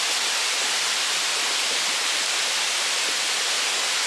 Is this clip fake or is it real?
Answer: real